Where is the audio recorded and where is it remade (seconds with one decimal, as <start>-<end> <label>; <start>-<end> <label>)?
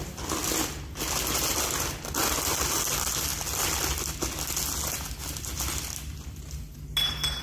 0.0-7.4 recorded